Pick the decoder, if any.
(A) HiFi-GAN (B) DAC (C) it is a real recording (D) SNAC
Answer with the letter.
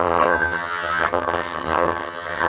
A